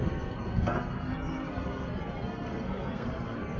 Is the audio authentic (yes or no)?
no